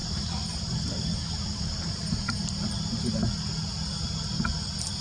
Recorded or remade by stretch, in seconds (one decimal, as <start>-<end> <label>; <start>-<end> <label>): 0.0-3.0 remade; 3.0-5.0 recorded